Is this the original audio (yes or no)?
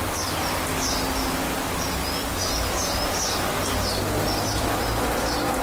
yes